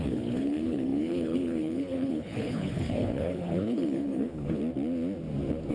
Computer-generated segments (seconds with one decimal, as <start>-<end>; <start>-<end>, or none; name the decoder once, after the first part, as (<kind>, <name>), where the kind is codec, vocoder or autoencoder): 0.0-4.6 (codec, HILCodec)